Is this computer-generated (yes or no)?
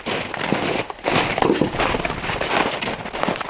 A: no